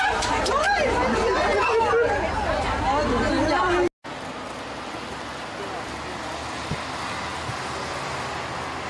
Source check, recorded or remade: recorded